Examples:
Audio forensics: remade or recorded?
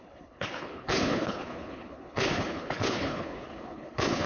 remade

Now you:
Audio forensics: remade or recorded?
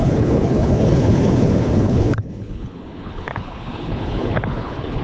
remade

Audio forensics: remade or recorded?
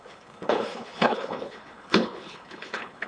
remade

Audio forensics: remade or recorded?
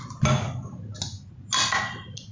recorded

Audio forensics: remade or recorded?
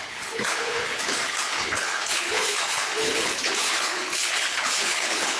remade